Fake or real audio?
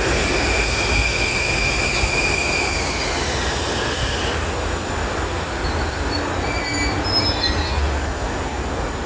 real